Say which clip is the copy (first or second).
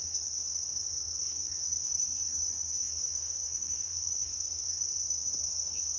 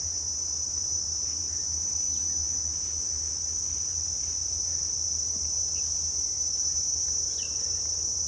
first